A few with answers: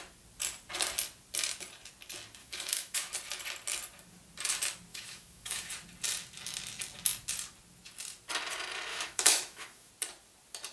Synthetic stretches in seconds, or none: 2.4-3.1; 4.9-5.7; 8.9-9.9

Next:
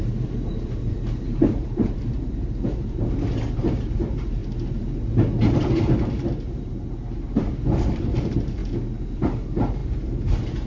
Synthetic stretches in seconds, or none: 0.0-4.4; 6.5-8.6; 9.2-10.7

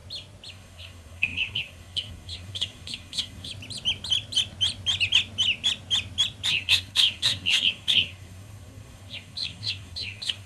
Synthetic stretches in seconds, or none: 0.5-3.5; 6.5-10.5

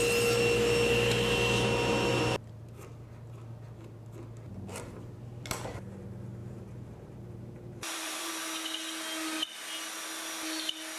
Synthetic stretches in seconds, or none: 6.4-8.3

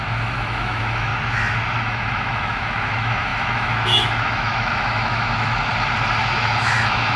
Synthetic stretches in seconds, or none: 0.0-1.1; 1.8-5.7; 6.2-7.2

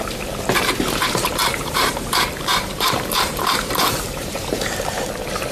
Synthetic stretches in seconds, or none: 1.4-4.7

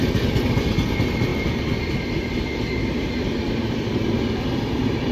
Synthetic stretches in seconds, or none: none

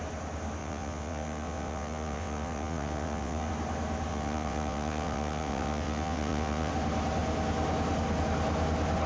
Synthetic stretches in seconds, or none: 0.6-3.5; 4.1-6.7